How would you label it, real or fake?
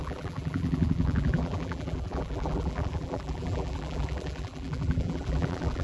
fake